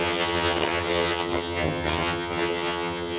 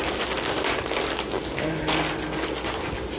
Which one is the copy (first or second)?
first